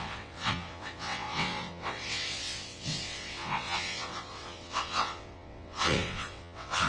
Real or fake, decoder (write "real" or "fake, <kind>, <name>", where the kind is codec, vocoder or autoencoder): fake, vocoder, WaveNeXt